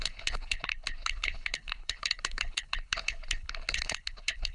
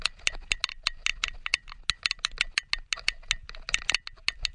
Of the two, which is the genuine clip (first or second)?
second